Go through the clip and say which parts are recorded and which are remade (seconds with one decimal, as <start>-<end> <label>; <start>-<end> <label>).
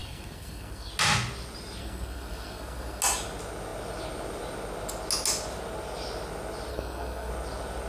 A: 0.0-0.9 remade; 0.9-1.8 recorded; 1.8-3.0 remade; 3.0-6.7 recorded; 6.7-7.3 remade; 7.3-7.9 recorded